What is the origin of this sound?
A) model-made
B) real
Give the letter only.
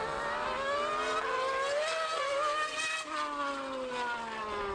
B